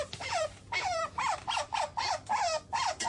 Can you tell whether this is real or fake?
fake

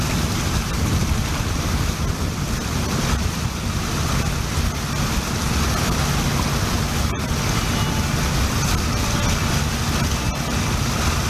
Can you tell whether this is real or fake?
real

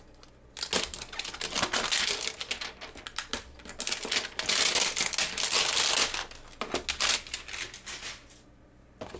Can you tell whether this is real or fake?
real